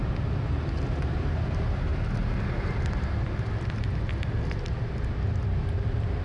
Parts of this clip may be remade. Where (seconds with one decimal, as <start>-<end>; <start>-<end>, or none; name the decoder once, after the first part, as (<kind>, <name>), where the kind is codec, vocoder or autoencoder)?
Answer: none